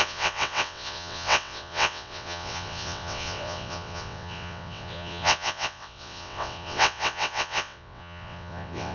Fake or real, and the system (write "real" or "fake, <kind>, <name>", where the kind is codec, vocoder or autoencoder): fake, vocoder, WaveNeXt